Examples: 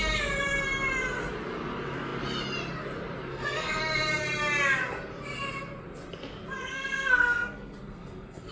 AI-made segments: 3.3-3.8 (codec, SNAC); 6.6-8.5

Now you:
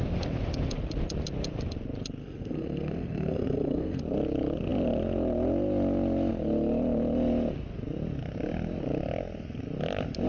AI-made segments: 2.2-4.0 (codec, SNAC)

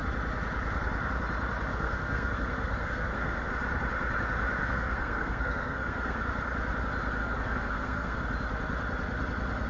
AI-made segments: 1.7-3.5 (codec, SNAC); 4.6-6.2; 7.2-8.2